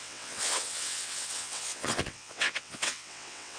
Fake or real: fake